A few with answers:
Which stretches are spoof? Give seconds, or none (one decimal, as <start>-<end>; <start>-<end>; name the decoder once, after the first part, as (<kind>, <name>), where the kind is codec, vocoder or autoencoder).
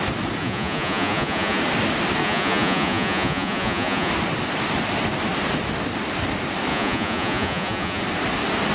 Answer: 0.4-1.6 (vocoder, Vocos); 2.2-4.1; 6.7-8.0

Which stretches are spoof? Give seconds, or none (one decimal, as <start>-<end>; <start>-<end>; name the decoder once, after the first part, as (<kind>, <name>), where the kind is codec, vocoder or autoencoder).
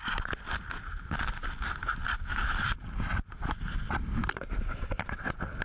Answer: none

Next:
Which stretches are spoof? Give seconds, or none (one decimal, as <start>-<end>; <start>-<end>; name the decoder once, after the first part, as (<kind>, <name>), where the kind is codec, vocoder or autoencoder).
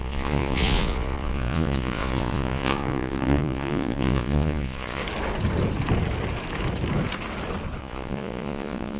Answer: 0.0-5.0 (vocoder, Vocos); 7.8-9.0